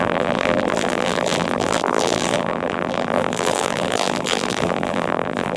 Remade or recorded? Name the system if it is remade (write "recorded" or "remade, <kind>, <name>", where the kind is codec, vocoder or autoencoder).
remade, vocoder, BigVGAN v2